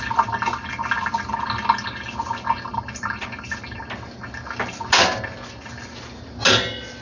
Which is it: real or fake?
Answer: real